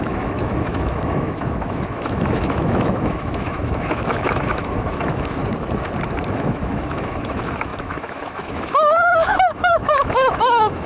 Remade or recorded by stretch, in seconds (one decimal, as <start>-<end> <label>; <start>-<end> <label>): 0.0-5.4 remade; 5.4-6.3 recorded; 6.3-10.9 remade